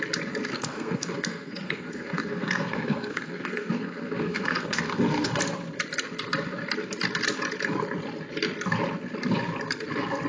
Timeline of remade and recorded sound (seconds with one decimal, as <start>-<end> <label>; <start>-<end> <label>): 0.0-0.5 recorded; 0.5-5.4 remade; 5.4-10.3 recorded